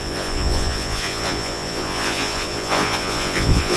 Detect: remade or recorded remade